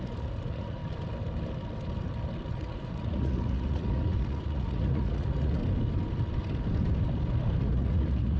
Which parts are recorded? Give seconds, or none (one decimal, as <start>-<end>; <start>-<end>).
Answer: 0.8-2.5; 5.6-7.6